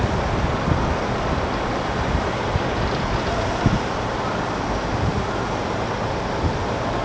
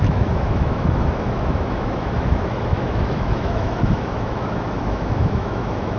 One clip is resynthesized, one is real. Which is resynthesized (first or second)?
second